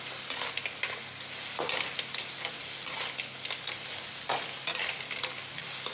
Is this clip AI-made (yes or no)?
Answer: no